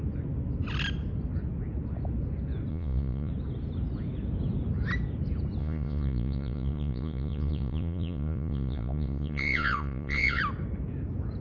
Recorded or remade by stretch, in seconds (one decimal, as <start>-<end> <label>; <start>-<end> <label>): 0.0-2.7 recorded; 2.7-3.3 remade; 3.3-5.6 recorded; 5.6-10.4 remade; 10.4-11.4 recorded